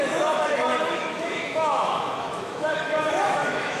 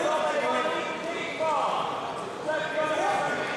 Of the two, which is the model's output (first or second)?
first